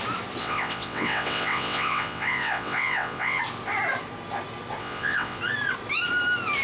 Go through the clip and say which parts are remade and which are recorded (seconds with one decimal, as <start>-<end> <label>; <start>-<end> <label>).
0.0-0.4 recorded; 0.4-3.4 remade; 3.4-4.8 recorded; 4.8-5.4 remade; 5.4-6.6 recorded